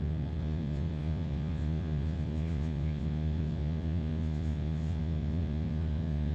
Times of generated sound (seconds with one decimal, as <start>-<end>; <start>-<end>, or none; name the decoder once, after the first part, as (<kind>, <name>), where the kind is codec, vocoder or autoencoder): 0.0-6.3 (vocoder, Vocos)